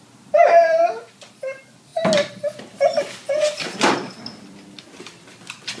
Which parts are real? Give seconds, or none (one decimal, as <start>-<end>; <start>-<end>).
0.0-5.8